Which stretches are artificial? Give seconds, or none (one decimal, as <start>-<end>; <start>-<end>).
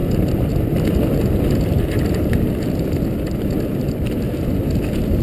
none